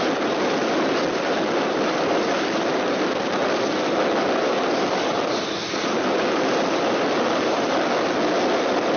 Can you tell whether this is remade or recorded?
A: recorded